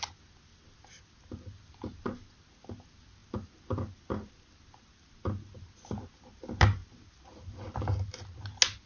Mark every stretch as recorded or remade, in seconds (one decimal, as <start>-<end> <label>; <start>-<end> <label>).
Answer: 0.0-8.9 recorded